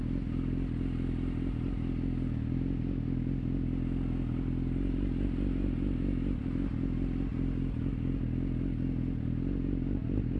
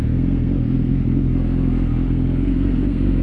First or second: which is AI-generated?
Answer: second